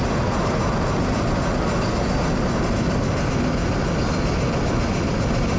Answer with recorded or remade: recorded